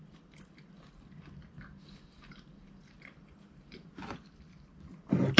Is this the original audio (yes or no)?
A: no